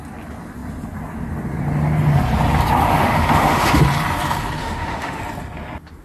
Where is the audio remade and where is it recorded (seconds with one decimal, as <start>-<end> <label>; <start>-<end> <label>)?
0.0-2.9 recorded; 2.9-3.8 remade; 3.8-4.6 recorded; 4.6-5.2 remade; 5.2-6.0 recorded